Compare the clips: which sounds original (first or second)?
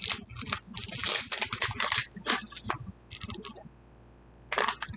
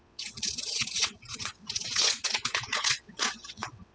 first